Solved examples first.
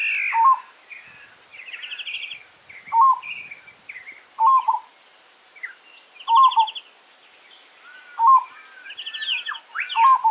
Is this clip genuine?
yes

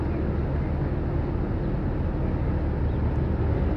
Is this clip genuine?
yes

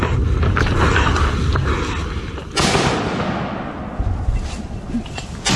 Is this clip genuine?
yes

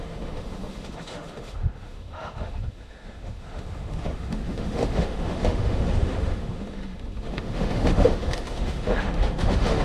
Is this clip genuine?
no